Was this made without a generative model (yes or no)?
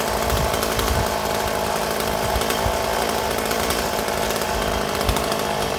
yes